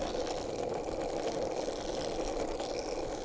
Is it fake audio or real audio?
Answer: real